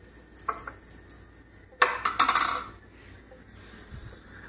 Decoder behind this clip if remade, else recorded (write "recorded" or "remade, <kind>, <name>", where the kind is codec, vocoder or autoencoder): recorded